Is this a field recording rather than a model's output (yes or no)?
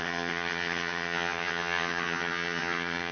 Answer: no